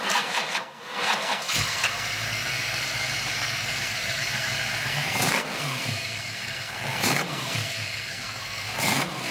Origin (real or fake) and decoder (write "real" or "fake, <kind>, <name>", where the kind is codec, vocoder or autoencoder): fake, codec, SNAC